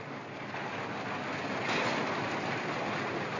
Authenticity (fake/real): real